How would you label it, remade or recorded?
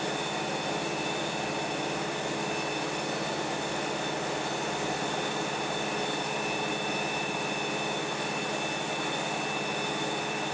recorded